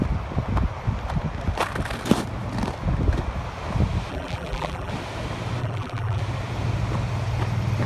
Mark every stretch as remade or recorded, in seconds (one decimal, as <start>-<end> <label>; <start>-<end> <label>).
0.0-4.1 recorded; 4.1-4.9 remade; 4.9-5.6 recorded; 5.6-6.2 remade; 6.2-7.9 recorded